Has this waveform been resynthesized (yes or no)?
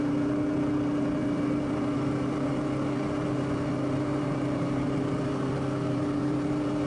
yes